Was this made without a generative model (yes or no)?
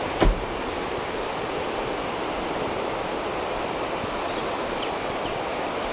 yes